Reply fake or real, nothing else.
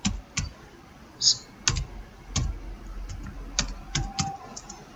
real